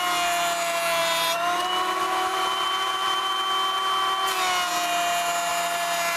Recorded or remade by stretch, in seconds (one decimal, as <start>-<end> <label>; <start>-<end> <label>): 0.0-1.0 recorded; 1.0-3.3 remade; 3.3-6.2 recorded